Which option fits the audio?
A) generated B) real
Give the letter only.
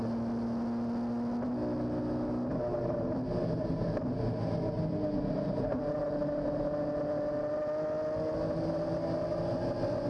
B